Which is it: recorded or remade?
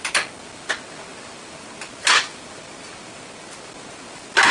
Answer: recorded